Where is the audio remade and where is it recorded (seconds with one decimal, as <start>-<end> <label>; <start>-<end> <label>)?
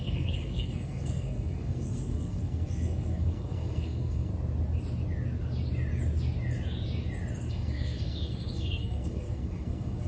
0.0-4.3 remade; 4.3-7.5 recorded; 7.5-10.1 remade